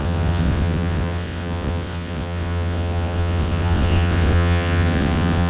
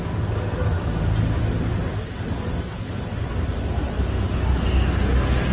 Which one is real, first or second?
second